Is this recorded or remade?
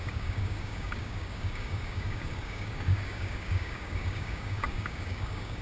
remade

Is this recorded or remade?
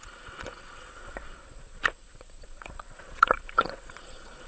remade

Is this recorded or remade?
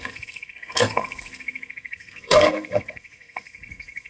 remade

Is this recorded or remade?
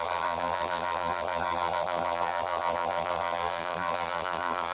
remade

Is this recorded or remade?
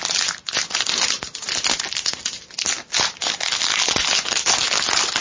recorded